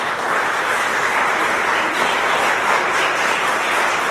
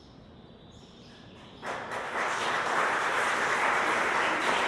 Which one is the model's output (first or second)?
second